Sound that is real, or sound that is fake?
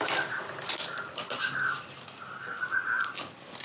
real